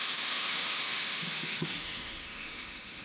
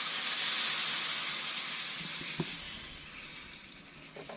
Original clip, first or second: second